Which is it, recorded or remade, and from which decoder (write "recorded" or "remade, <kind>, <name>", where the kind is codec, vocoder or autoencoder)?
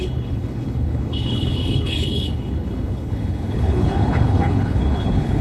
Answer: remade, codec, HILCodec